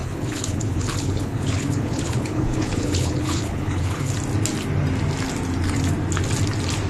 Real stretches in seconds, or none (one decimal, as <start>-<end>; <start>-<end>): 4.1-6.9